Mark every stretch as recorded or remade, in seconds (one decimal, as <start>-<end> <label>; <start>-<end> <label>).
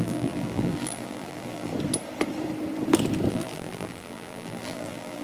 0.0-1.7 remade; 1.7-3.3 recorded; 3.3-5.2 remade